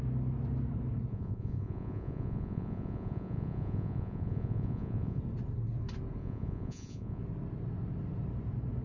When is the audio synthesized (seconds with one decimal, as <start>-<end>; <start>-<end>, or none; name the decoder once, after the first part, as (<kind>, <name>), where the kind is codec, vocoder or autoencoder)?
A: 1.1-5.2 (vocoder, Vocos); 6.2-7.2